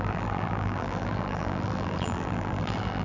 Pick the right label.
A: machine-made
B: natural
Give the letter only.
A